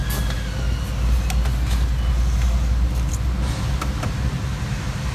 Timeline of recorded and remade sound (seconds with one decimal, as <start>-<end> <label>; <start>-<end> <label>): 0.0-5.1 recorded